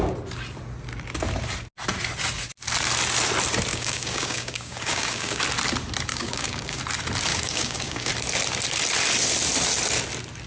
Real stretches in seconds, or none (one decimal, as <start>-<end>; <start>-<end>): 0.0-3.7; 5.4-6.1; 6.8-7.3; 8.1-10.5